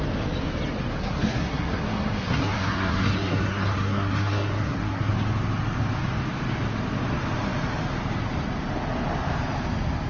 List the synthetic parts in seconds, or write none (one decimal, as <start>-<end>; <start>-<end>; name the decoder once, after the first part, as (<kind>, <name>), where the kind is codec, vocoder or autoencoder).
1.0-5.1 (codec, SNAC)